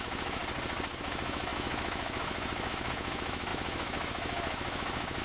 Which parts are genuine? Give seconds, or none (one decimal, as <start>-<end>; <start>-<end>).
0.4-1.0